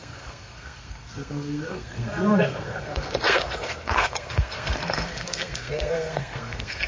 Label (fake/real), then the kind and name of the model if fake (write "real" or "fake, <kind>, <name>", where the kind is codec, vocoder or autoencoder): fake, codec, SNAC